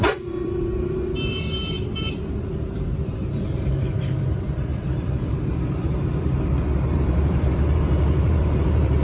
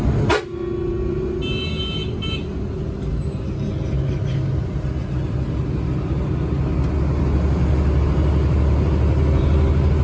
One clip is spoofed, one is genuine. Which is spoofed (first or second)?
first